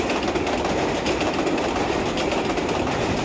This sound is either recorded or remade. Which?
recorded